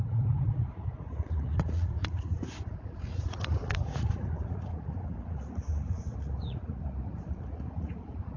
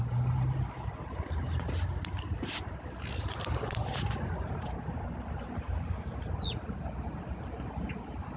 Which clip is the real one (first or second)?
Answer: second